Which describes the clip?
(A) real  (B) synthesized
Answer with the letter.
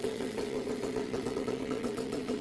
B